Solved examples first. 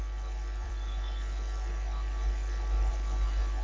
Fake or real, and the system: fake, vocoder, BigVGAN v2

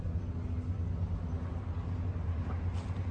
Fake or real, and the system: real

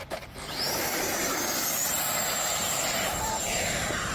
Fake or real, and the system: fake, vocoder, BigVGAN v2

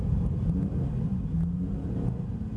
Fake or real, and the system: real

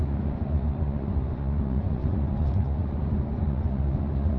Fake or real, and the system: fake, vocoder, Vocos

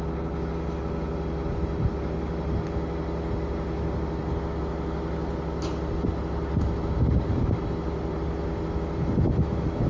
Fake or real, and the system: real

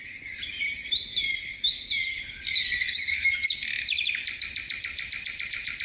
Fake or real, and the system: real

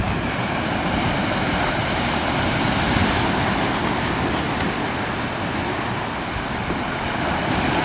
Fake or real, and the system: real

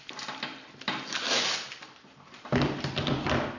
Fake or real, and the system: real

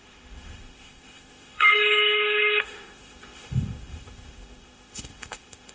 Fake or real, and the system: fake, autoencoder, DAC-VAE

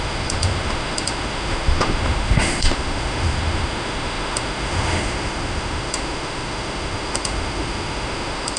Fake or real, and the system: fake, autoencoder, DAC-VAE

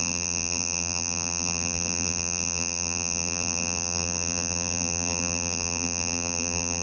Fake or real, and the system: fake, vocoder, BigVGAN v2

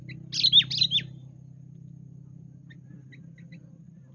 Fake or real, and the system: real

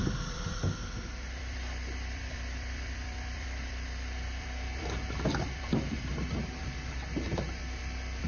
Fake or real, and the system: fake, vocoder, BigVGAN v2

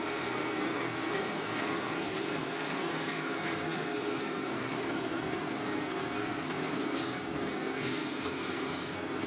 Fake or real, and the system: fake, codec, SNAC